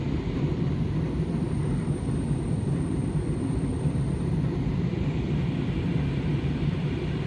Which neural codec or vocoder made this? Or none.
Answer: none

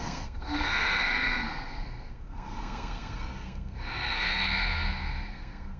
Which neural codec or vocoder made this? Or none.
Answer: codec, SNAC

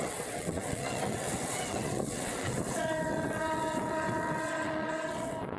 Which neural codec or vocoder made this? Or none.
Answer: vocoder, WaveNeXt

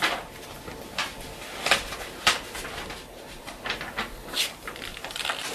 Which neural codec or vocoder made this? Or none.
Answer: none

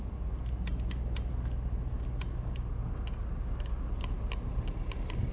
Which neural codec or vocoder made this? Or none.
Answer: none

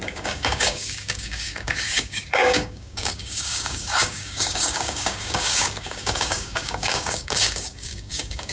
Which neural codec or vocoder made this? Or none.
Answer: codec, DAC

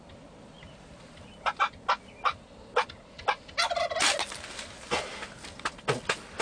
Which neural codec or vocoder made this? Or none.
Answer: none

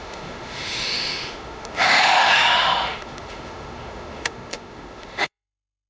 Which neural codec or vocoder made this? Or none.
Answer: autoencoder, DAC-VAE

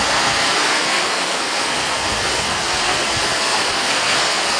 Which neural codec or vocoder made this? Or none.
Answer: codec, SNAC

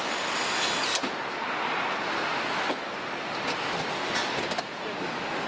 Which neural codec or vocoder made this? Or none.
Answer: none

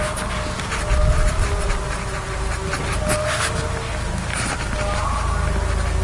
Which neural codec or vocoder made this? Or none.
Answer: none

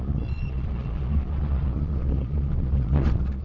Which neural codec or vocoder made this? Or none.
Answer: vocoder, Vocos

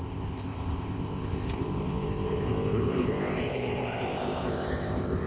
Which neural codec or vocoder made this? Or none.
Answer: codec, ZipCodec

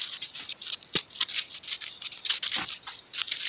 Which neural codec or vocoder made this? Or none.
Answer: none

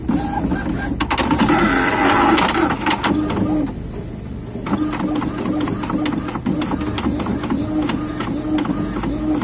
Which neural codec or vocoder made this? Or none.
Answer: none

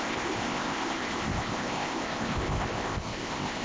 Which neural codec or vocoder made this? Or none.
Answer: codec, ZipCodec